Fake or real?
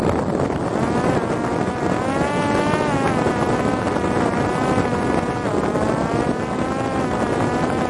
real